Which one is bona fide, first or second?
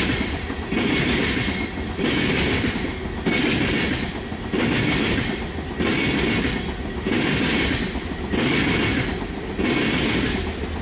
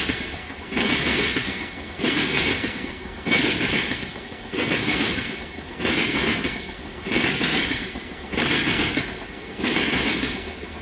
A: first